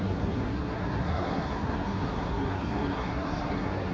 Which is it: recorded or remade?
remade